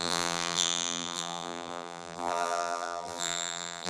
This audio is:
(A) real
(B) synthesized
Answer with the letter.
B